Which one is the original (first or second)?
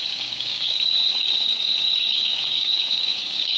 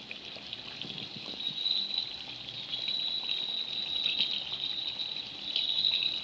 second